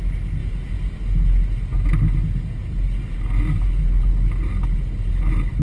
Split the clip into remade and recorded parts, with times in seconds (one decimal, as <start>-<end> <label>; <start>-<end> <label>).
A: 0.0-5.6 recorded